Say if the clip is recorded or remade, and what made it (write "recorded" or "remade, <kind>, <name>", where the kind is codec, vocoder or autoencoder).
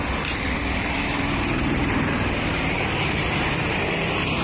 remade, vocoder, BigVGAN v2